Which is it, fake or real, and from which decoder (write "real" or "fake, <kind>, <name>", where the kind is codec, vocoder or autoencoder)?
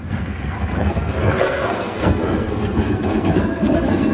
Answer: fake, codec, SNAC